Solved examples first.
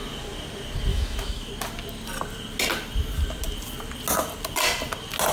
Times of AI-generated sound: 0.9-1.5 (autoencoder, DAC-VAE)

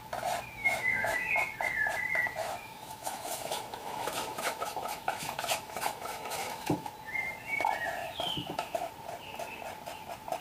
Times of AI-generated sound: 0.6-1.3 (autoencoder, DAC-VAE); 2.4-6.9; 8.0-8.9

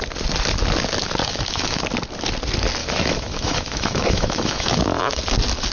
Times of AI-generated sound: 1.2-1.8 (autoencoder, DAC-VAE); 2.8-5.2